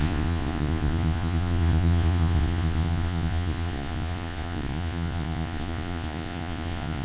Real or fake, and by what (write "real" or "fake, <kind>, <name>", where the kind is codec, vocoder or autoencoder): fake, vocoder, Vocos